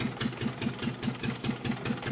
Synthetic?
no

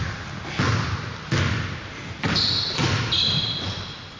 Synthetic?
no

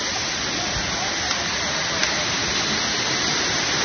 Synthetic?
no